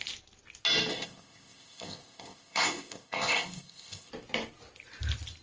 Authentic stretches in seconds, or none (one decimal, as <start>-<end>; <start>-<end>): 0.0-0.9; 4.1-5.4